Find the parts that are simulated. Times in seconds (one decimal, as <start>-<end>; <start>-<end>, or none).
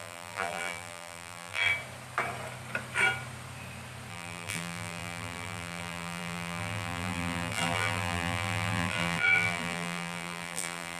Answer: 0.0-1.7; 4.1-11.0